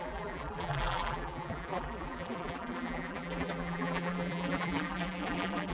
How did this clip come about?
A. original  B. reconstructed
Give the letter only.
B